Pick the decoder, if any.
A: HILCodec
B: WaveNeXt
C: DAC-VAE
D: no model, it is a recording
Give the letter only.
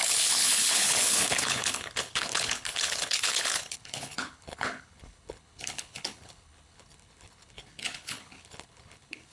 A